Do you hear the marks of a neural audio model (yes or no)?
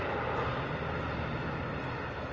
no